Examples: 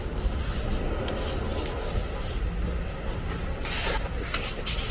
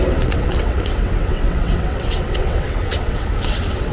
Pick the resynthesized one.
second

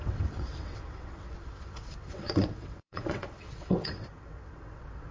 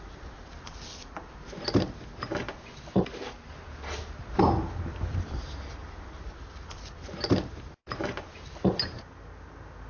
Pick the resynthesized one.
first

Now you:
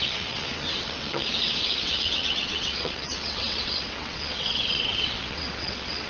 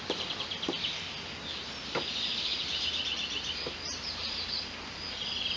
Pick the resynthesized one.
first